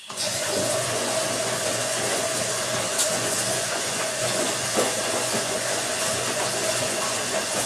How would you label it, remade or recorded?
remade